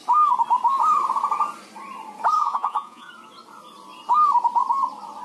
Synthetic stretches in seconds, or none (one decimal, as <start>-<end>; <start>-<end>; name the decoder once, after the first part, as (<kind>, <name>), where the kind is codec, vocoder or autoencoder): 2.4-3.1 (vocoder, Vocos)